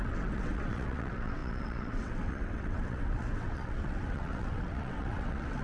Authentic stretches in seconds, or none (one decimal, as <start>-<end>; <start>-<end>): none